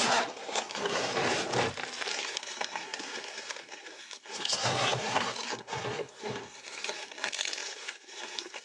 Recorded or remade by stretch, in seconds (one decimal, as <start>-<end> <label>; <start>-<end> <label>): 0.0-1.1 remade; 1.1-2.1 recorded; 2.1-8.6 remade